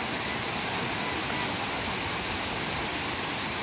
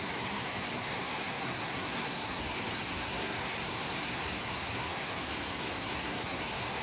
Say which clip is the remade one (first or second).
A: second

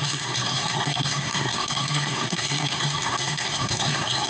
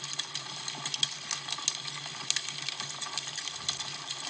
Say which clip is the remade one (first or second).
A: first